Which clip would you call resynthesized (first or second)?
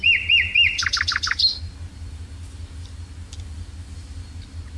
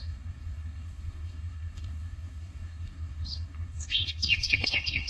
second